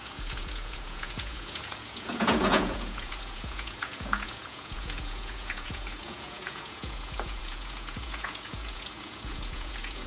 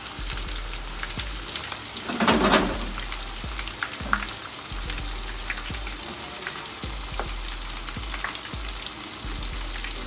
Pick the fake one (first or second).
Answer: first